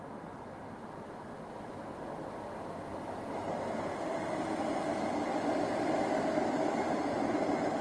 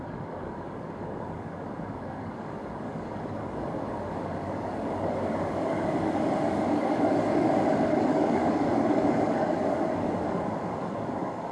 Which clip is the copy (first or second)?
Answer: second